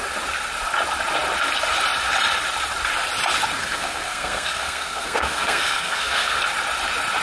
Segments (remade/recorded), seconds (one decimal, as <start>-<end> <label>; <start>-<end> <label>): 0.0-3.6 recorded; 3.6-6.4 remade; 6.4-7.2 recorded